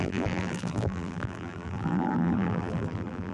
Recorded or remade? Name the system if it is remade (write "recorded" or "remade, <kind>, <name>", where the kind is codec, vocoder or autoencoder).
remade, vocoder, BigVGAN v2